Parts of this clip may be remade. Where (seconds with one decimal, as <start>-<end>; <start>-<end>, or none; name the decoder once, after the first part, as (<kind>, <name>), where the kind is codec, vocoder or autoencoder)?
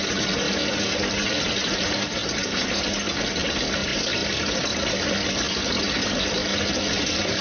none